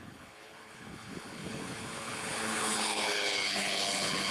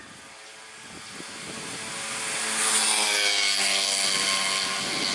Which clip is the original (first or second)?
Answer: second